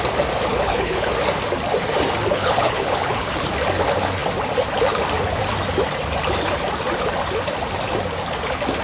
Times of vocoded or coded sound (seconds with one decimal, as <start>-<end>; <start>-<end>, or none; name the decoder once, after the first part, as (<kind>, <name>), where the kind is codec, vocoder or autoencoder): 0.5-1.1 (codec, HILCodec); 2.3-3.3

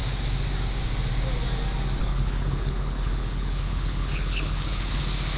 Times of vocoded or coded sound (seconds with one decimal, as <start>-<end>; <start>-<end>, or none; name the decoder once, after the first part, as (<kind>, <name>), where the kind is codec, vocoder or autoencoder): 2.0-5.0 (codec, HILCodec)

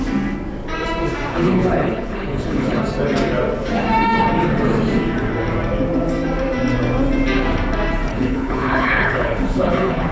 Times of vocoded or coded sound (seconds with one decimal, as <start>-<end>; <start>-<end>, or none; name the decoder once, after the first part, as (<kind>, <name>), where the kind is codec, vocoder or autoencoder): 1.3-2.8 (codec, HILCodec); 8.1-10.1

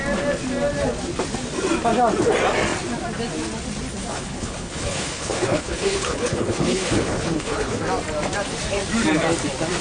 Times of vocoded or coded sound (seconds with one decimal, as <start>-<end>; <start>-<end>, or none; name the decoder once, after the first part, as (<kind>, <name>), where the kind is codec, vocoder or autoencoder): 4.1-7.8 (codec, HILCodec)

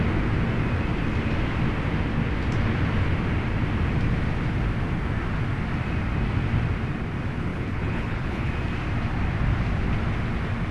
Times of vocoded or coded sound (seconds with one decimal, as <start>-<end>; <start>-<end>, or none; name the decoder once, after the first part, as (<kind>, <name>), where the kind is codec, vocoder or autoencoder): 7.5-8.5 (codec, HILCodec)

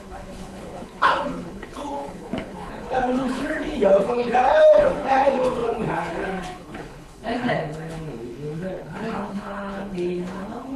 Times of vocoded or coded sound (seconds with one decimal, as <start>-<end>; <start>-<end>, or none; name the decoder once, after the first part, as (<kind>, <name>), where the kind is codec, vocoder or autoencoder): 0.0-10.8 (codec, HILCodec)